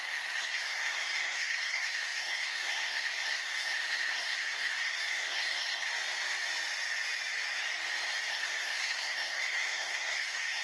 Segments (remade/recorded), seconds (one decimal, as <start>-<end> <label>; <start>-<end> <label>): 0.0-5.9 remade; 5.9-8.3 recorded; 8.3-10.6 remade